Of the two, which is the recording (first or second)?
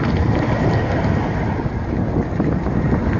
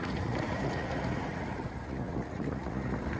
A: first